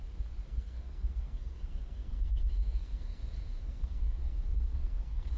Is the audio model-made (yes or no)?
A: yes